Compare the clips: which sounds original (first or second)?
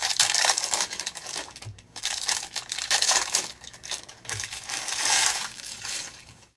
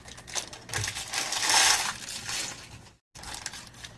second